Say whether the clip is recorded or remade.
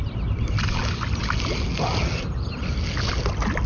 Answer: recorded